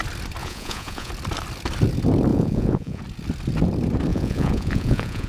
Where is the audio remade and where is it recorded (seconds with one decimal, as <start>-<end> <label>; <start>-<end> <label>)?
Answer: 0.0-0.4 recorded; 0.4-1.1 remade; 1.1-2.3 recorded; 2.3-3.0 remade; 3.0-4.1 recorded; 4.1-5.3 remade